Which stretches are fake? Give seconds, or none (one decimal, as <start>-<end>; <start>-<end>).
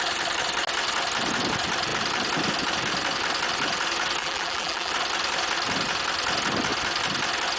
4.2-4.9